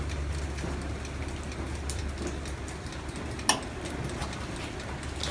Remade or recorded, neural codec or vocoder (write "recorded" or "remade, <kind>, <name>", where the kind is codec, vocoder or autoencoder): recorded